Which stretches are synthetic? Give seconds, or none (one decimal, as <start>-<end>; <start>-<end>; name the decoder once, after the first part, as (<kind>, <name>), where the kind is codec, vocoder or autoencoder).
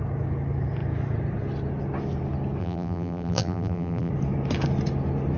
2.6-4.1 (vocoder, BigVGAN v2)